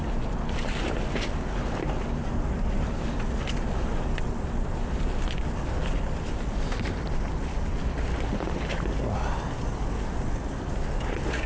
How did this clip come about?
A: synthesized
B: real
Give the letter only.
B